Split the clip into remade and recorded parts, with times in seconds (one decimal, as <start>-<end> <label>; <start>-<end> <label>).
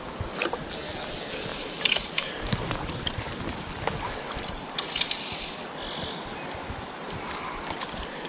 0.0-1.5 recorded; 1.5-3.3 remade; 3.3-8.3 recorded